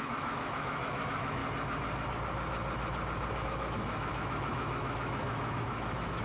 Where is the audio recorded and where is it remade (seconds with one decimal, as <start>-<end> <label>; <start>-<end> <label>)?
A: 0.0-1.4 remade; 1.4-3.4 recorded; 3.4-6.2 remade

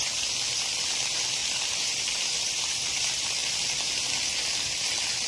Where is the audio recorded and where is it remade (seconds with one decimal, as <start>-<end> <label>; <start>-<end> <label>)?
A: 0.0-3.4 remade; 3.4-5.3 recorded

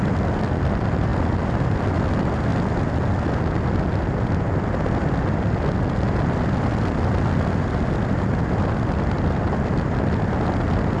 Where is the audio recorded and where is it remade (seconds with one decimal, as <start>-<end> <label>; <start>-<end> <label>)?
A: 0.0-11.0 recorded

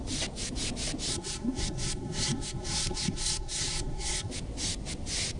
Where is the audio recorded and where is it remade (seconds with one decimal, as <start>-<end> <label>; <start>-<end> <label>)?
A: 0.0-1.1 recorded; 1.1-4.3 remade; 4.3-5.4 recorded